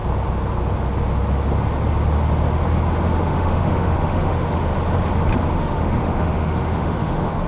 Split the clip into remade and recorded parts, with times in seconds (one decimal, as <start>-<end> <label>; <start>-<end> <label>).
0.0-3.2 recorded; 3.2-4.7 remade; 4.7-5.6 recorded; 5.6-7.5 remade